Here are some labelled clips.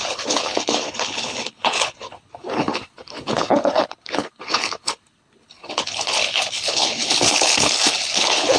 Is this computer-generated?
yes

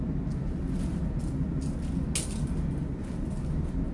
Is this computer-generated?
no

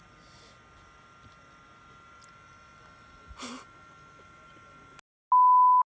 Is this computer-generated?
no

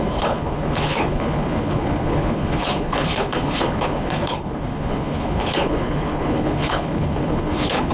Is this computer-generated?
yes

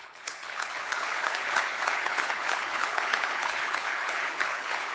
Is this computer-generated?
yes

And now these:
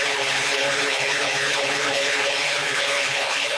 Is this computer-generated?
yes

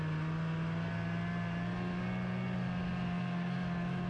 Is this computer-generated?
no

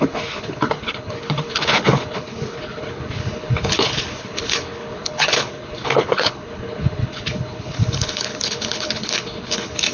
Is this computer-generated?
yes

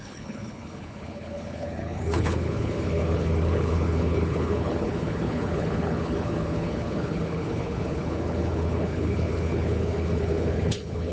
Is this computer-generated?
yes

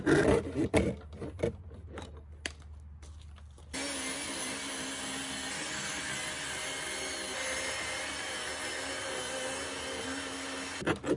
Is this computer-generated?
no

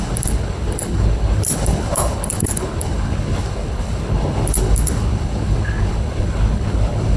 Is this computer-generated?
yes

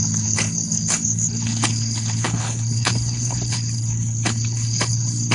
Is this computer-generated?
yes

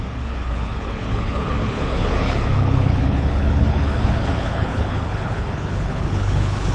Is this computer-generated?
yes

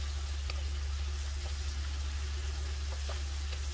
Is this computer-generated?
no